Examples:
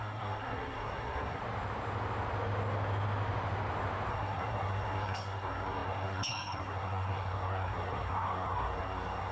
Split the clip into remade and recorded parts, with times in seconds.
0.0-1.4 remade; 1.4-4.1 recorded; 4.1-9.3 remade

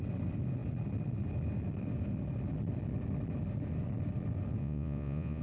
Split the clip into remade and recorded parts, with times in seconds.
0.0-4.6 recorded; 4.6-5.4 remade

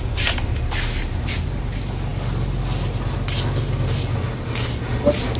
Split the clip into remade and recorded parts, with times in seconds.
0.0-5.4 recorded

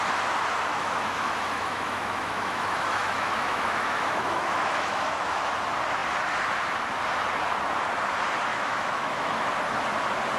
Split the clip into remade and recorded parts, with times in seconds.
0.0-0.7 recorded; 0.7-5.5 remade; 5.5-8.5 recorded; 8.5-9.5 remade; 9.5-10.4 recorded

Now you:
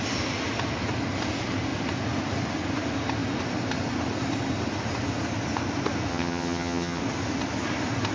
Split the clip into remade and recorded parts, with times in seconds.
0.0-6.1 recorded; 6.1-7.0 remade; 7.0-8.1 recorded

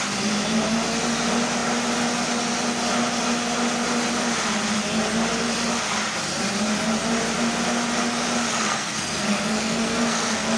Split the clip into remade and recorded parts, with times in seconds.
0.0-8.5 recorded; 8.5-10.6 remade